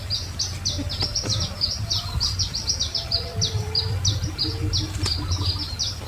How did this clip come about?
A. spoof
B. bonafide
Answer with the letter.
B